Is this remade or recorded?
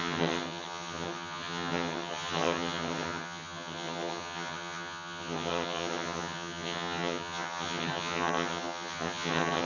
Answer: remade